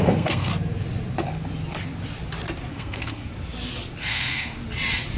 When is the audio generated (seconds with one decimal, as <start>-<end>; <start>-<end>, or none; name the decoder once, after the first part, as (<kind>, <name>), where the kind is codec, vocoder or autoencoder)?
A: 0.0-0.5 (codec, SNAC); 2.7-3.3; 4.0-4.6